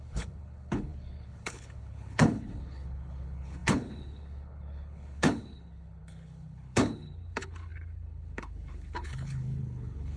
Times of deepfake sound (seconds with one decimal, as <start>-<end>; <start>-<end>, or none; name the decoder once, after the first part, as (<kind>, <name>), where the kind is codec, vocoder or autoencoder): 0.0-10.2 (codec, HILCodec)